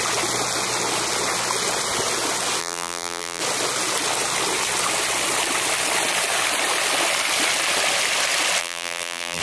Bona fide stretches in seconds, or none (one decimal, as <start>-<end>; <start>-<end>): 0.0-2.6; 3.4-8.6